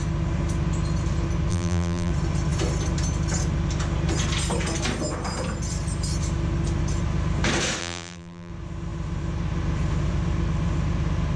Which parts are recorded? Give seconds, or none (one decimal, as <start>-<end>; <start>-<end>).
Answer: 0.0-1.5; 2.1-7.8; 8.5-11.4